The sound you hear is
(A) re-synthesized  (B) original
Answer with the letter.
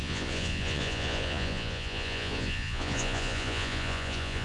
A